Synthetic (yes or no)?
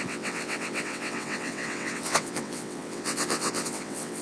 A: yes